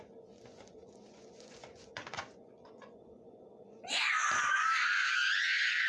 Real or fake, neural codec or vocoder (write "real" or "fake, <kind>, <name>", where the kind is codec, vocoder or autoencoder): fake, vocoder, Vocos